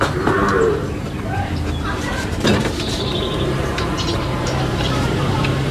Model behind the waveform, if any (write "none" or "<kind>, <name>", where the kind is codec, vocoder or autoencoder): vocoder, BigVGAN v2